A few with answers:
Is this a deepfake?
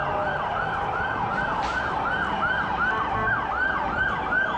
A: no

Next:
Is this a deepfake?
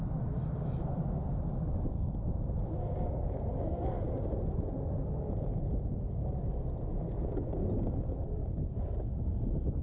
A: no